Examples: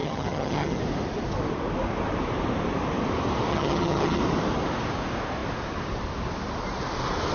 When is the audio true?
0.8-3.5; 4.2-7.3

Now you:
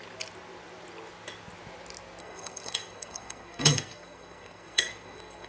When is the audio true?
0.0-2.2